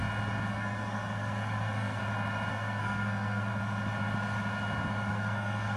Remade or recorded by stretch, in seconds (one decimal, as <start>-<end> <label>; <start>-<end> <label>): 0.0-0.5 recorded; 0.5-2.0 remade; 2.0-2.5 recorded; 2.5-3.5 remade; 3.5-5.1 recorded; 5.1-5.8 remade